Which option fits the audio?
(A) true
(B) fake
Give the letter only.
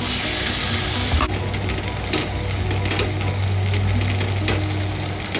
A